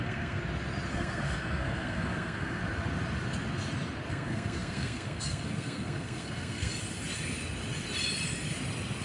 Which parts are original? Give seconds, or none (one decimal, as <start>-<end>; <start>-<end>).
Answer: 0.4-0.9; 2.6-4.1; 6.7-9.0